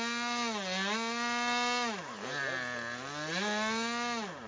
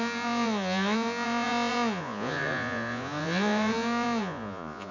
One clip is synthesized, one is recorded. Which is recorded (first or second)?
first